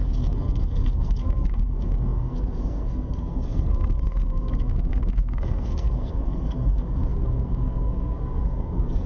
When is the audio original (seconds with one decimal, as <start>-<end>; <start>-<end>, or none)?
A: none